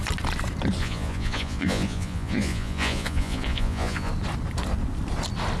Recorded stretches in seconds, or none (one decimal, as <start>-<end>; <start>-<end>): 0.0-0.8; 4.1-5.6